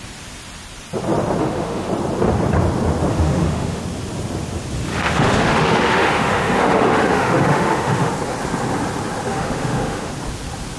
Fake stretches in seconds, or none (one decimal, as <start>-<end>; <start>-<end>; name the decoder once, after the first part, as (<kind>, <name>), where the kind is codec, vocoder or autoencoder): 1.4-1.9 (autoencoder, DAC-VAE); 3.1-3.8; 4.9-8.1; 9.3-10.1